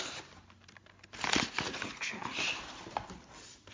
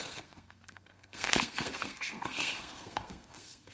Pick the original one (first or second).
first